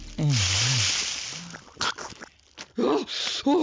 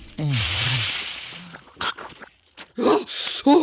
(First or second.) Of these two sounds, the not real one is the second